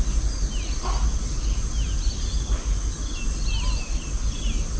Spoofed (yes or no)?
no